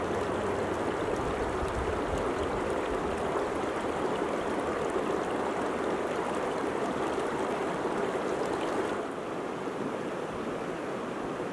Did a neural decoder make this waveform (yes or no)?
no